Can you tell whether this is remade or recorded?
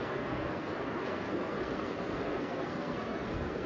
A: remade